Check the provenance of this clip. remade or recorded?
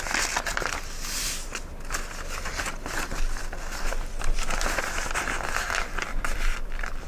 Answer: recorded